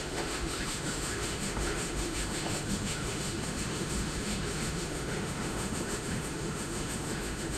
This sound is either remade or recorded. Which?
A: remade